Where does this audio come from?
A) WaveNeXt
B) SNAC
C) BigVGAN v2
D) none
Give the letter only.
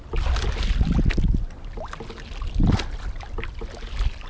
D